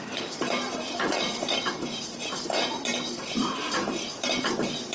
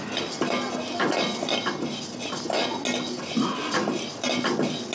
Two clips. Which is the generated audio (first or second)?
first